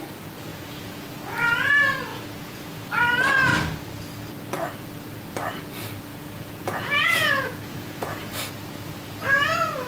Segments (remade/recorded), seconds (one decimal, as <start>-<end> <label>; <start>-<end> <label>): 0.0-0.5 recorded; 0.5-1.1 remade; 1.1-2.1 recorded; 2.1-2.9 remade; 2.9-6.1 recorded; 6.1-8.5 remade; 8.5-9.9 recorded